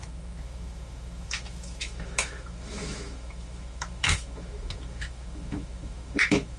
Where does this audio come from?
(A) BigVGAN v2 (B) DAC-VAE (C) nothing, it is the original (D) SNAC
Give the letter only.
B